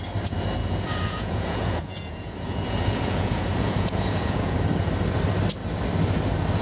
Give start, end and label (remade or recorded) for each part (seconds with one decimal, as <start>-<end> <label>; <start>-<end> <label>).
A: 0.0-0.6 recorded; 0.6-4.6 remade; 4.6-6.6 recorded